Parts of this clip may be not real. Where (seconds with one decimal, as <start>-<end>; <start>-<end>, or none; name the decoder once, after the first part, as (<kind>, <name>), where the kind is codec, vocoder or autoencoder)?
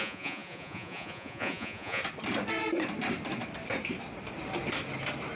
0.0-2.0 (vocoder, Vocos)